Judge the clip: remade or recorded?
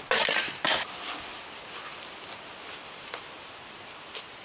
recorded